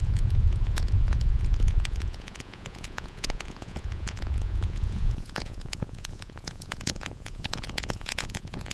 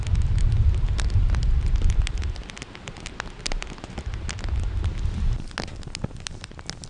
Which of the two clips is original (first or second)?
second